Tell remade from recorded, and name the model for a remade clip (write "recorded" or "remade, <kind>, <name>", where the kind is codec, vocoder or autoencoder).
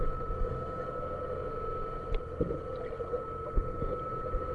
recorded